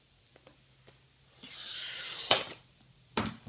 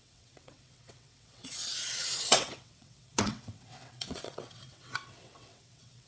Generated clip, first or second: second